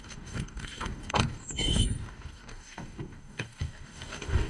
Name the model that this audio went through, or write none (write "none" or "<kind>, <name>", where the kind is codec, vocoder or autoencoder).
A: codec, DAC